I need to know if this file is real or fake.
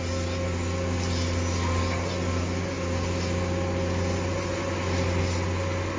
real